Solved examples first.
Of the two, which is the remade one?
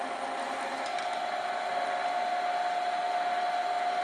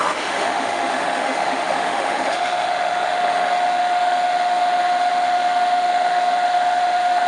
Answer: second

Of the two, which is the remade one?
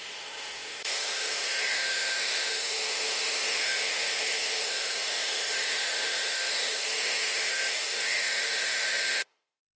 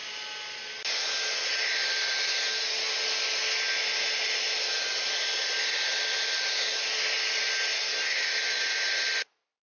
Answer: first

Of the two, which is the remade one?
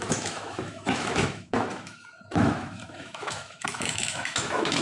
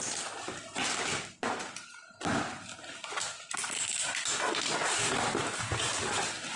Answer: first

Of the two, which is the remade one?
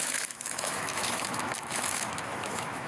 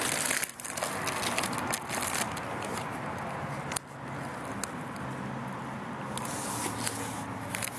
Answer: first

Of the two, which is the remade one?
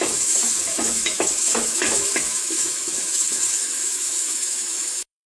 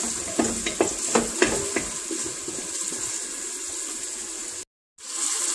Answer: first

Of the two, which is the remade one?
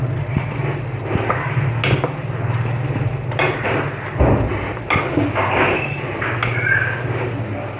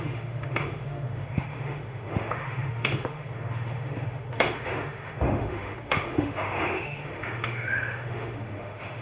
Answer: second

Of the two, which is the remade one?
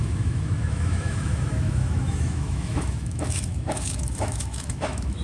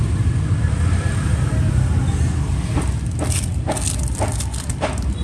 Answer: first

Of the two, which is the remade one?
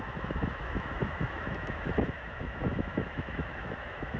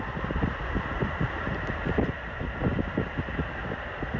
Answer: first